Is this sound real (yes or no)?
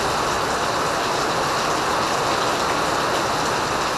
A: yes